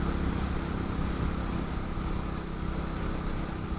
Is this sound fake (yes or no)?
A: no